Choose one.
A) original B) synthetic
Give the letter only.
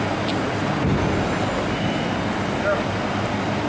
A